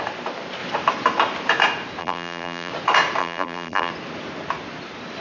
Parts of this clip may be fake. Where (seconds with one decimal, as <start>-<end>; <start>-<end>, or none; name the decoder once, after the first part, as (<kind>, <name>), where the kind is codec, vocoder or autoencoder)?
2.0-2.7 (vocoder, BigVGAN v2); 3.2-3.9